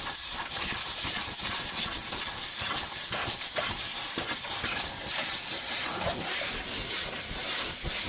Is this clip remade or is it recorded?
remade